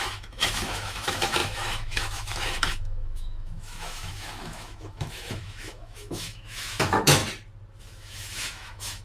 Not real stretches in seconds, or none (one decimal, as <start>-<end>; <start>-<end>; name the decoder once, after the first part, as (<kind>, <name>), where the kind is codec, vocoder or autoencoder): 0.0-7.2 (autoencoder, DAC-VAE); 7.8-9.0